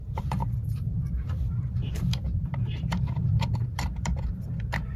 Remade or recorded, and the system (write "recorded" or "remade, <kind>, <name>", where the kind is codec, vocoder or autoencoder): remade, vocoder, BigVGAN v2